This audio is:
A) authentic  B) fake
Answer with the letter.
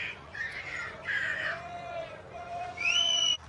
B